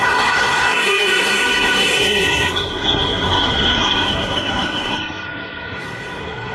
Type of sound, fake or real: fake